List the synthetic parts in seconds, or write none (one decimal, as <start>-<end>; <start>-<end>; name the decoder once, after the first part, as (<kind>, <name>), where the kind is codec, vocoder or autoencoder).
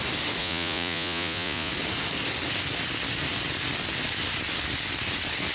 0.4-1.7 (vocoder, Vocos)